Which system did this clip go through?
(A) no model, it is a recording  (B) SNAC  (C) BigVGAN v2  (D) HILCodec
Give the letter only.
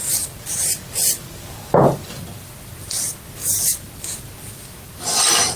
A